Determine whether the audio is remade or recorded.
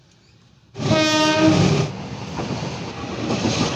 recorded